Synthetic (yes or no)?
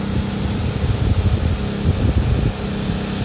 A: no